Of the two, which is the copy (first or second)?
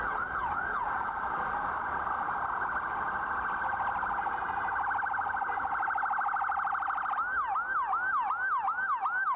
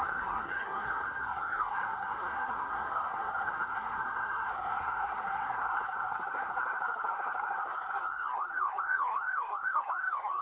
second